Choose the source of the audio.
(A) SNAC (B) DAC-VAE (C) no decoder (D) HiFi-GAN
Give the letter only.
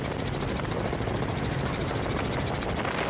C